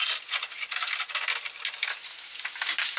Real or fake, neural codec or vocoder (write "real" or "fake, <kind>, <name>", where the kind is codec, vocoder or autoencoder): real